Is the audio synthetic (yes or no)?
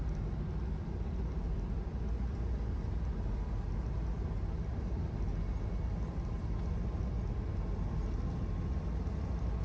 no